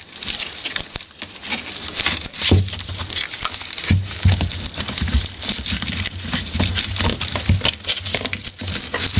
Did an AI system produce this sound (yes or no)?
no